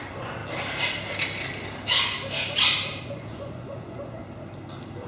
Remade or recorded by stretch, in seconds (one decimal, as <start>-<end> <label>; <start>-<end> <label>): 0.0-0.4 remade; 0.4-3.0 recorded; 3.0-4.2 remade; 4.2-5.1 recorded